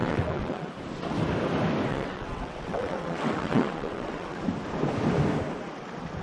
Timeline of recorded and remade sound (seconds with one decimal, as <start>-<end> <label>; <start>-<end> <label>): 0.0-0.7 remade; 0.7-1.9 recorded; 1.9-4.4 remade; 4.4-6.2 recorded